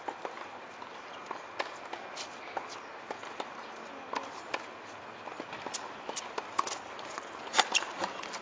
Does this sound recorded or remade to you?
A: recorded